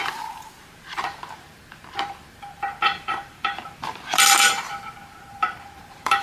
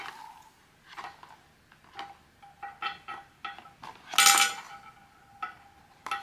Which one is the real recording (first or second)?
second